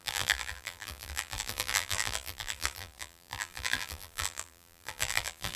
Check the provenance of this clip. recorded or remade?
remade